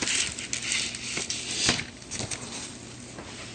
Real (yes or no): yes